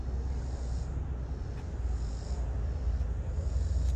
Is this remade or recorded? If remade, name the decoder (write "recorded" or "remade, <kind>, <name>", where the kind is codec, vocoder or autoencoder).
recorded